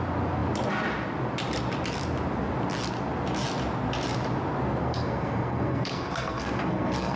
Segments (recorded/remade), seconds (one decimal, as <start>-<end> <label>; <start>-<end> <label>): 0.0-4.8 recorded; 4.8-7.2 remade